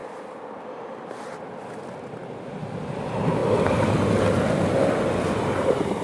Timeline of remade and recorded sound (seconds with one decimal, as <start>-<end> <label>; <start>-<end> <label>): 0.0-6.0 recorded